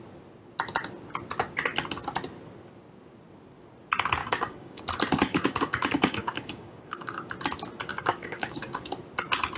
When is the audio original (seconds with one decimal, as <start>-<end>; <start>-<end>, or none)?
0.0-4.2; 4.8-5.3; 7.3-7.9; 8.9-9.6